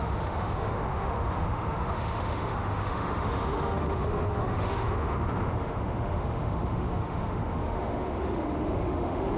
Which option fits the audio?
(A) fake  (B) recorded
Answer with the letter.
A